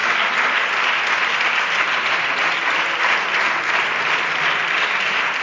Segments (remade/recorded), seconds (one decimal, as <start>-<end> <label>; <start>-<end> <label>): 0.0-5.4 recorded